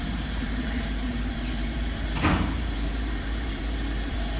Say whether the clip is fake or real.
fake